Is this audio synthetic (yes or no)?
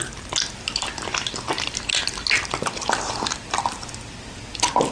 no